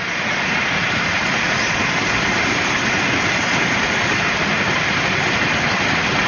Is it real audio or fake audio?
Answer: real